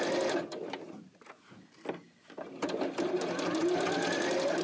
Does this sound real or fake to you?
real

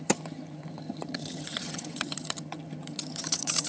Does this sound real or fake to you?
fake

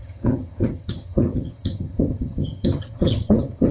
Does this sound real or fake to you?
fake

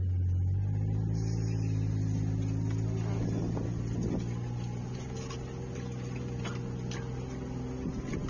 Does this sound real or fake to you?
real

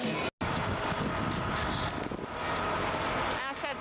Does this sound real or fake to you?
real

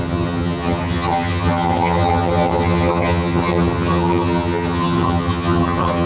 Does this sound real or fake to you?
fake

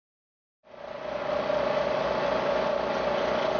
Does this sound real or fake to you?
real